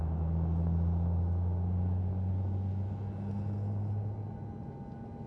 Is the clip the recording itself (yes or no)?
yes